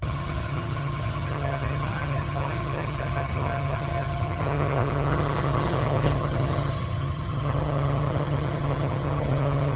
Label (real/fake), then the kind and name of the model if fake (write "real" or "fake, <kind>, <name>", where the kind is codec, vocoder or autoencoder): fake, vocoder, HiFi-GAN